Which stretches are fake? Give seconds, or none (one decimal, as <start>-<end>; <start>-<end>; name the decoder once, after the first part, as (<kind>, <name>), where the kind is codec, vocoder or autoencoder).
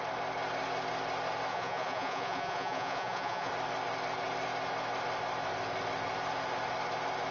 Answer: 1.5-3.5 (vocoder, Vocos)